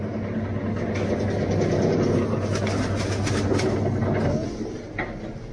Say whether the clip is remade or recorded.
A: recorded